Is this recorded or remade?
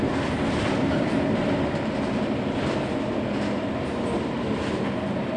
recorded